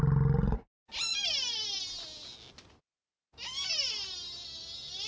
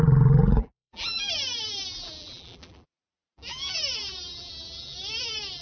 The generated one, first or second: second